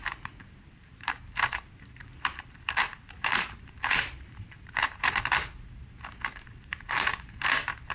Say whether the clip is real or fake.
fake